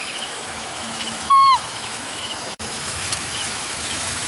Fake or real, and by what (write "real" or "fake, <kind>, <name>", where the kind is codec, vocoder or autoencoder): fake, autoencoder, DAC-VAE